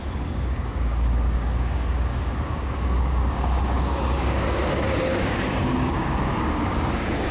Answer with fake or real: fake